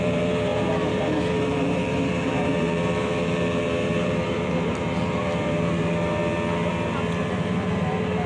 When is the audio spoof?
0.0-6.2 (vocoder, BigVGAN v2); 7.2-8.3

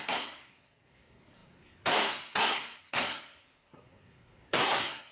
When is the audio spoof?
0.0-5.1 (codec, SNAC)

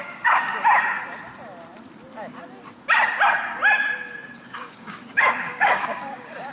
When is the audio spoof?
0.0-0.5 (codec, DAC); 4.4-6.5

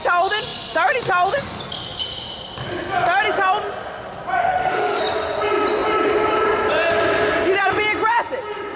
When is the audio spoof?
4.4-5.0 (autoencoder, DAC-VAE)

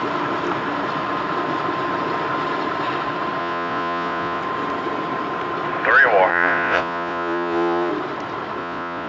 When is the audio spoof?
3.4-4.4 (vocoder, Vocos); 6.3-7.9; 8.6-9.1